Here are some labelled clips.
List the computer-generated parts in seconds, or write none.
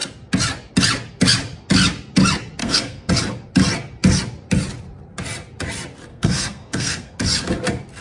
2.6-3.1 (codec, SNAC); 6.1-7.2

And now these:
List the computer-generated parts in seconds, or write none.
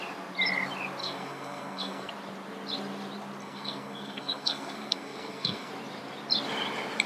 1.0-2.1 (codec, SNAC); 3.4-5.7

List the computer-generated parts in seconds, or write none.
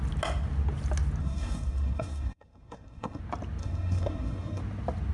1.2-3.2 (codec, SNAC); 3.6-4.6